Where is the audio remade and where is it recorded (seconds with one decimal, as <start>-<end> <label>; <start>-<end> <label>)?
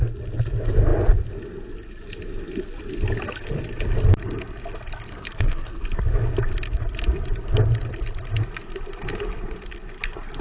0.0-5.1 recorded; 5.1-5.8 remade; 5.8-10.4 recorded